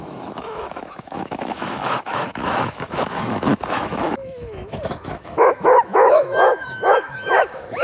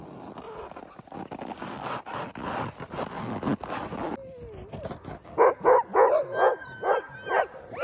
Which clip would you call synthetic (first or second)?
first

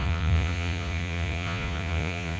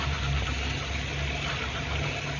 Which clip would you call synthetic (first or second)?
first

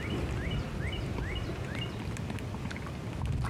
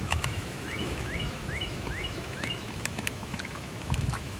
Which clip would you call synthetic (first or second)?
second